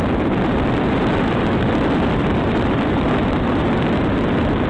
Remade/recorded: remade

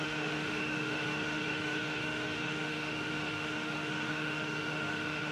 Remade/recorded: remade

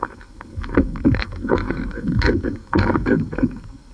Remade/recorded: remade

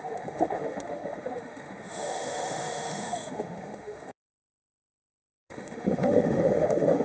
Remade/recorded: remade